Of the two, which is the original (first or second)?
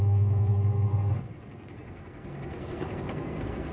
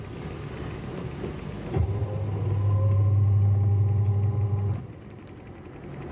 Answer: second